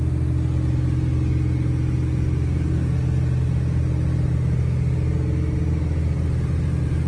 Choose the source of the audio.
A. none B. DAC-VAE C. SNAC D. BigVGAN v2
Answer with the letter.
A